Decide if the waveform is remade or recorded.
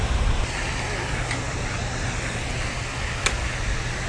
recorded